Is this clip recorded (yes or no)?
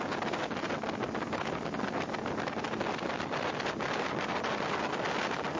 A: yes